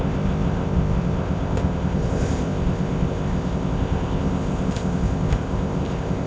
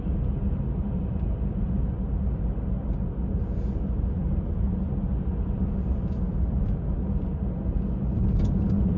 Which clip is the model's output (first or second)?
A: first